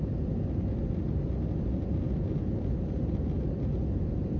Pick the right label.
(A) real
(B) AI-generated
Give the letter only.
A